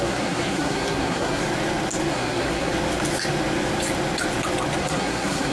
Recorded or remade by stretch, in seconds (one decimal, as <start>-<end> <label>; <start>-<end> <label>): 0.0-1.4 remade; 1.4-2.1 recorded; 2.1-2.7 remade; 2.7-4.8 recorded; 4.8-5.5 remade

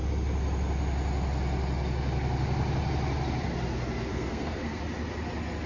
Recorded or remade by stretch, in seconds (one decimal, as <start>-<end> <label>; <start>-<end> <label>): 0.0-4.1 recorded; 4.1-4.8 remade; 4.8-5.7 recorded